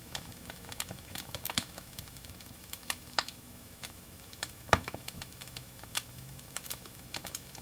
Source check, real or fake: fake